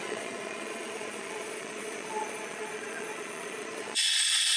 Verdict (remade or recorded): remade